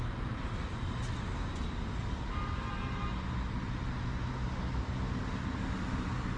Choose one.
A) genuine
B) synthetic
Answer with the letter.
A